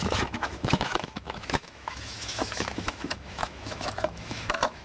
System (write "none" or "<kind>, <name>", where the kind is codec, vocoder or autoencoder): autoencoder, DAC-VAE